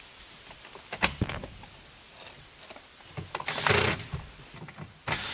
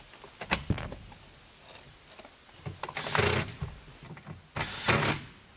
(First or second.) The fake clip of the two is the first